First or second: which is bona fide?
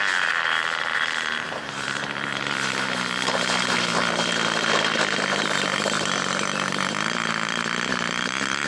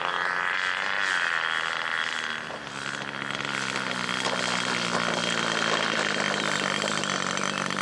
second